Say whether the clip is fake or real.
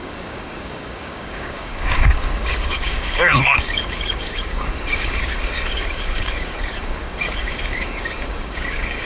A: fake